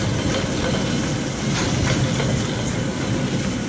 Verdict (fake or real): real